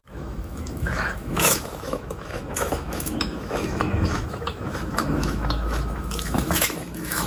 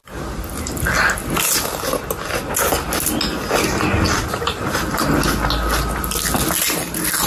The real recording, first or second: second